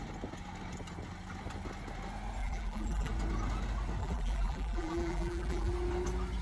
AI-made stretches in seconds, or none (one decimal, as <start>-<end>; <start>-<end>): 2.4-3.1; 4.0-5.7